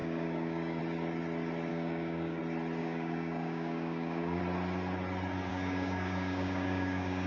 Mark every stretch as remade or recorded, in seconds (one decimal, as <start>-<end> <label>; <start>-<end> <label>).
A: 0.0-0.8 remade; 0.8-1.7 recorded; 1.7-2.4 remade; 2.4-2.8 recorded; 2.8-4.4 remade; 4.4-5.5 recorded; 5.5-7.3 remade